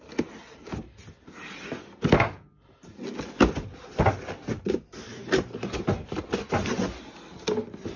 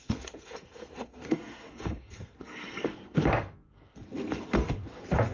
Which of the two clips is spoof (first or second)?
second